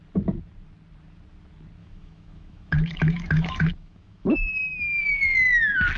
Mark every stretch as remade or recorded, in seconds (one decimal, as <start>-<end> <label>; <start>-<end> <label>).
0.0-1.8 recorded; 1.8-5.0 remade; 5.0-6.0 recorded